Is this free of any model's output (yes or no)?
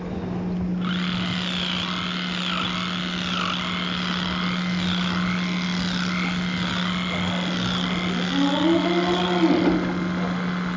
yes